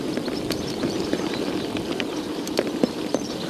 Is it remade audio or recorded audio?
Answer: remade